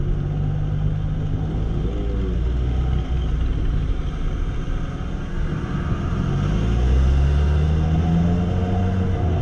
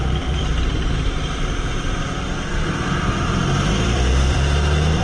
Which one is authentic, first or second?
first